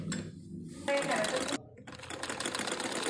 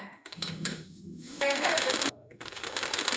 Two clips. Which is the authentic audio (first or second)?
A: first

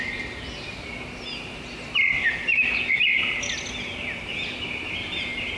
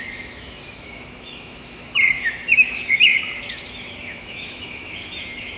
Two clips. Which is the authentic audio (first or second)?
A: first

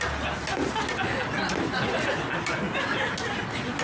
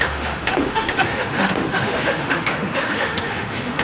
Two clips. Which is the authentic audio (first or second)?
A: first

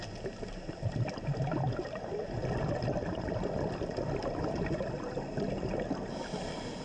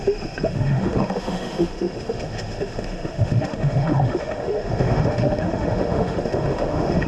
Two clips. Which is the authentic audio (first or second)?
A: first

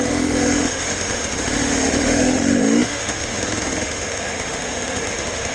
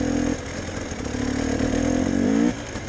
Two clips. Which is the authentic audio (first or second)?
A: second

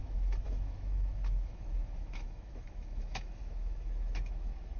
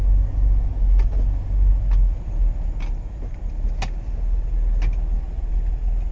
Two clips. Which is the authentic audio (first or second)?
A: second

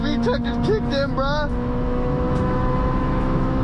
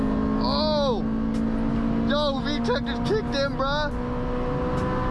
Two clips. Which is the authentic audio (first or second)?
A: second